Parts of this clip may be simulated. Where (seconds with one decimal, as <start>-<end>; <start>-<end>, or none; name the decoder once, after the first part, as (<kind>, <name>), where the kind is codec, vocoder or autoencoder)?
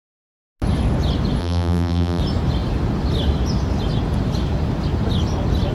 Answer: 1.4-2.2 (vocoder, BigVGAN v2)